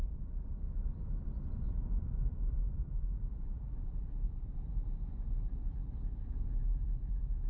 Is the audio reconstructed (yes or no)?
yes